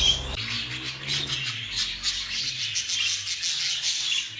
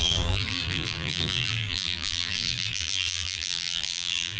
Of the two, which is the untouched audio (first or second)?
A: first